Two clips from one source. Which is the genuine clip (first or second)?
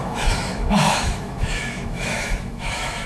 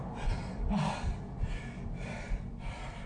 second